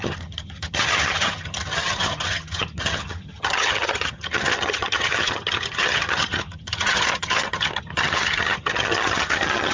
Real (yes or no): no